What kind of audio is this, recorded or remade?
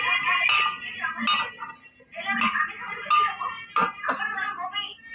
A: recorded